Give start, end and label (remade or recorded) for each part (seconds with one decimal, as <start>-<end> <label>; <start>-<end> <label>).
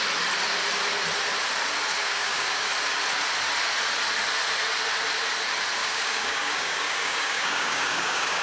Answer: 0.0-2.0 recorded; 2.0-2.7 remade; 2.7-5.8 recorded; 5.8-8.4 remade